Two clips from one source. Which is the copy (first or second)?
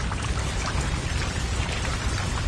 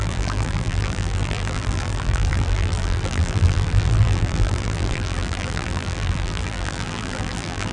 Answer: second